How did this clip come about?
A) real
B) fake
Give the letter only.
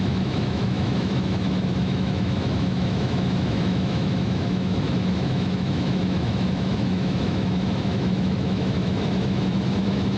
B